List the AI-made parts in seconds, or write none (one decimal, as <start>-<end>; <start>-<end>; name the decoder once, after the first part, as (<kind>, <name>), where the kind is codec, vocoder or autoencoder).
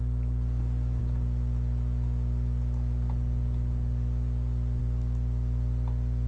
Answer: none